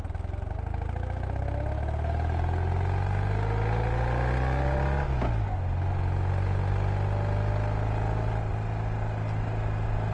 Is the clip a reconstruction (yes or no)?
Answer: no